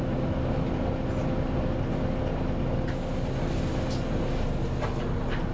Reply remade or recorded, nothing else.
recorded